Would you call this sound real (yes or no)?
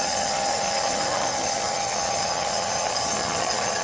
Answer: no